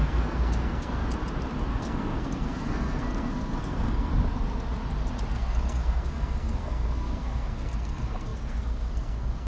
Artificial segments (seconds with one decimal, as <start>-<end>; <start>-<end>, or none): 0.0-1.0; 1.7-4.1; 5.3-9.5